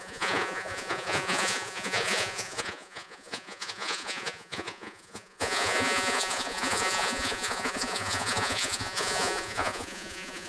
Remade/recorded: remade